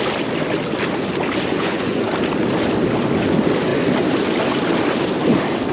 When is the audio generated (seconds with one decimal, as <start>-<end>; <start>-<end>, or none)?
1.5-2.1